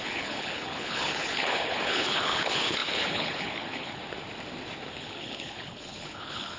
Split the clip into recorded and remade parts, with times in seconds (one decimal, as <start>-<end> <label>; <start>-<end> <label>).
0.0-4.0 remade; 4.0-4.9 recorded; 4.9-6.6 remade